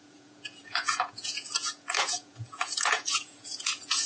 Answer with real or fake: fake